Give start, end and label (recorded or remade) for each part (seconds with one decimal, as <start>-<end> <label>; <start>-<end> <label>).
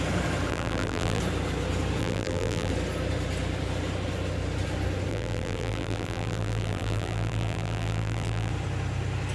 0.0-0.5 recorded; 0.5-1.2 remade; 1.2-2.0 recorded; 2.0-2.7 remade; 2.7-5.1 recorded; 5.1-8.5 remade; 8.5-9.3 recorded